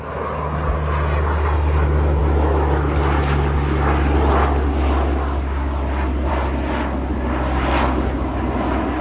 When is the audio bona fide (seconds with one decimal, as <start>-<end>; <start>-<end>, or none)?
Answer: 0.0-9.0